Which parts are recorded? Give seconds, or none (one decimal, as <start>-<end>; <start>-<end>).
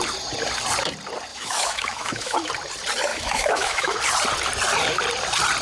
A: 0.0-1.3; 2.5-3.1; 4.0-5.6